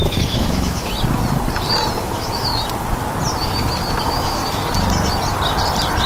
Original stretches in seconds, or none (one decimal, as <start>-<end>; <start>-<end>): 0.9-2.0; 2.5-4.0; 4.4-6.1